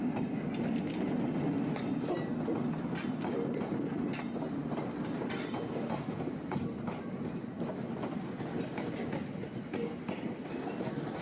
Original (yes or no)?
yes